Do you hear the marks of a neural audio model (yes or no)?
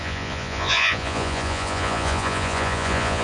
yes